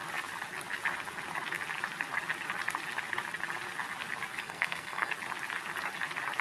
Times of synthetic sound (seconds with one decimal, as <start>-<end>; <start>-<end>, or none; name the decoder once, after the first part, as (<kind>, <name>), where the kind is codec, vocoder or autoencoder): 4.4-5.1 (codec, SNAC)